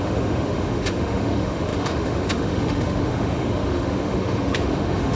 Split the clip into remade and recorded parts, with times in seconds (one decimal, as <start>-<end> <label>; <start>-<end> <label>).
0.0-5.2 remade